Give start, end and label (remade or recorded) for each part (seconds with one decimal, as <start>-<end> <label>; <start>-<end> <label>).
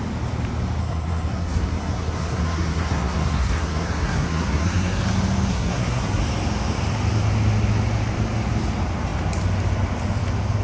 0.0-0.8 recorded; 0.8-5.0 remade; 5.0-5.5 recorded; 5.5-6.2 remade; 6.2-10.6 recorded